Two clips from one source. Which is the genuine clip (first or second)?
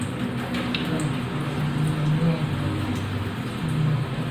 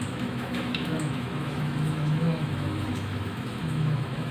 first